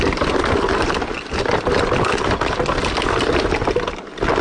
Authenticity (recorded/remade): recorded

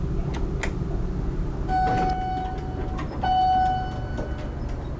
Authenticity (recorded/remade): recorded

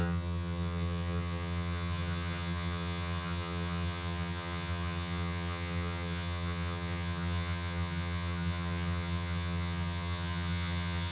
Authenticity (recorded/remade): remade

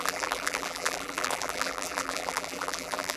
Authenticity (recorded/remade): remade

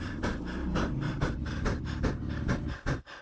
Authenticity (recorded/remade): recorded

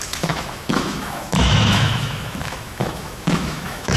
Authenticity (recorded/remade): remade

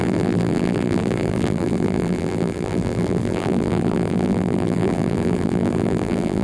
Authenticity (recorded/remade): remade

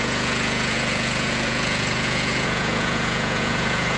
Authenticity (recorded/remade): remade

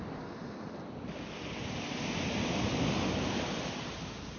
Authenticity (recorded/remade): recorded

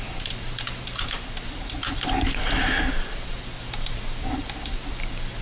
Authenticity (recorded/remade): remade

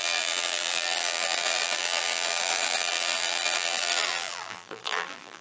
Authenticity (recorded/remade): remade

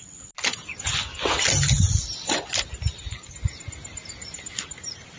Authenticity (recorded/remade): recorded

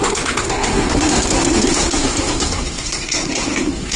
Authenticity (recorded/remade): remade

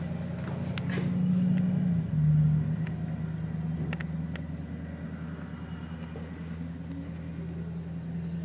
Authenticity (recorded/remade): recorded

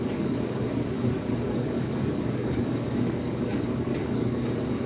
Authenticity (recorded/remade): remade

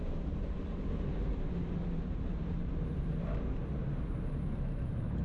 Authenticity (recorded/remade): remade